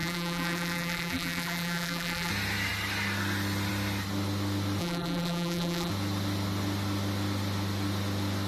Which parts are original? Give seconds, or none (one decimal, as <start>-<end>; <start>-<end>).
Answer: 2.3-4.8; 5.9-8.5